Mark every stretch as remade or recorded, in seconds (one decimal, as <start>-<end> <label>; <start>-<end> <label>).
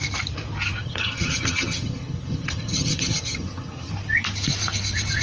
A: 0.0-0.8 recorded; 0.8-3.9 remade; 3.9-5.2 recorded